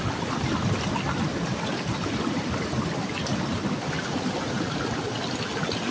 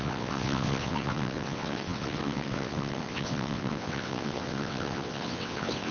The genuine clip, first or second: first